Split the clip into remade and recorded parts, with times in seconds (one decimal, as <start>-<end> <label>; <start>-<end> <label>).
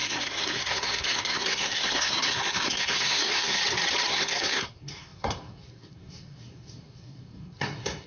0.0-3.6 remade; 3.6-4.1 recorded; 4.1-8.1 remade